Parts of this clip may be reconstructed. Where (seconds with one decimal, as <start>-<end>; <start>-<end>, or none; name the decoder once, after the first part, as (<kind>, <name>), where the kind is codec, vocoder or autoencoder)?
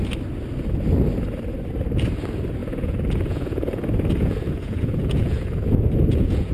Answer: 2.6-6.5 (vocoder, Vocos)